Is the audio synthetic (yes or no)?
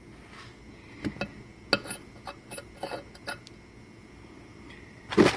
no